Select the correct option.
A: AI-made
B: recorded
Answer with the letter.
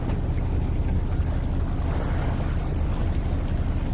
B